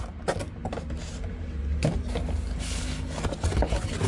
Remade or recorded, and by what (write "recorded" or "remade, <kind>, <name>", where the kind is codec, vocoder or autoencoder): recorded